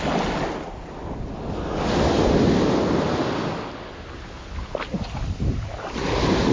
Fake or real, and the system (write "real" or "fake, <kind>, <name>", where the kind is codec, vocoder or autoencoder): real